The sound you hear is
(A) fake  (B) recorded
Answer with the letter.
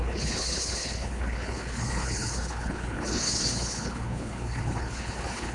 A